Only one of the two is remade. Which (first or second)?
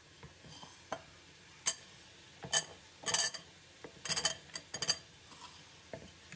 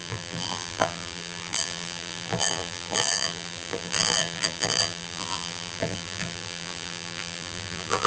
second